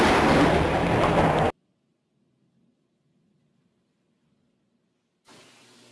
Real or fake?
real